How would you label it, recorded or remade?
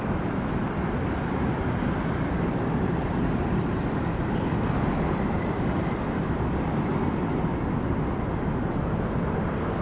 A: recorded